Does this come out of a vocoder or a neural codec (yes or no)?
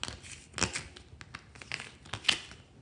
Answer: no